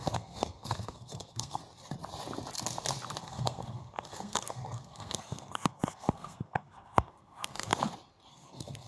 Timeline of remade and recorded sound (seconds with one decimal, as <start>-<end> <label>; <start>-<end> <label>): 0.0-1.6 remade; 1.6-3.2 recorded; 3.2-7.7 remade; 7.7-8.3 recorded; 8.3-8.9 remade